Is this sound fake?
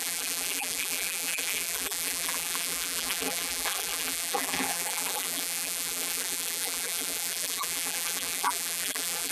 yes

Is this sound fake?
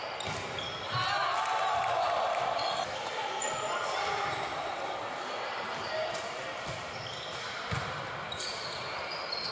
no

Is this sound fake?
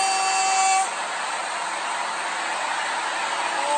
no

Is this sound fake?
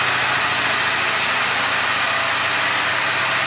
no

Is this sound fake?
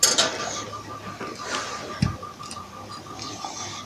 no